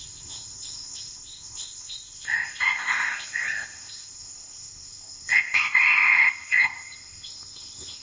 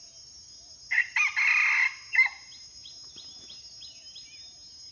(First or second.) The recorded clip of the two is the second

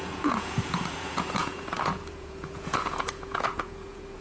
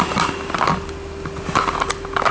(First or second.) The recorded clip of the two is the second